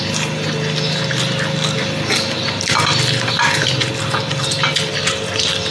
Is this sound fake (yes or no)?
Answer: no